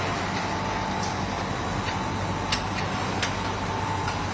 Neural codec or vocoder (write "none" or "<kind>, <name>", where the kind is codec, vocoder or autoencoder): none